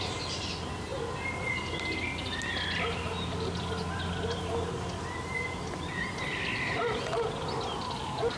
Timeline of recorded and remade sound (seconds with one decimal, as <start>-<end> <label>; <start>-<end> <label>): 0.0-8.4 recorded

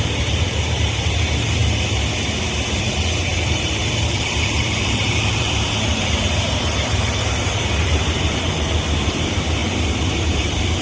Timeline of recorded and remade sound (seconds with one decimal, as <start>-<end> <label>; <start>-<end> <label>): 0.0-1.6 remade; 1.6-2.4 recorded; 2.4-10.8 remade

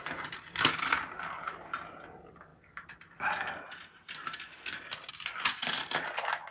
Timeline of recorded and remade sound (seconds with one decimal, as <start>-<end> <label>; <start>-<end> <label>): 0.0-6.5 recorded

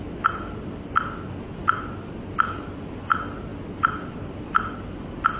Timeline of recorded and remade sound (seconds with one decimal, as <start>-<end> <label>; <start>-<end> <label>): 0.0-5.4 recorded